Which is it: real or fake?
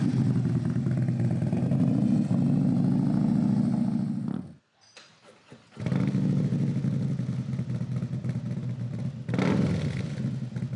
real